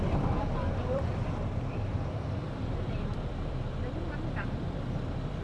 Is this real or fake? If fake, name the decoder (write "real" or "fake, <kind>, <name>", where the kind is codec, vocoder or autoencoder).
fake, vocoder, BigVGAN v2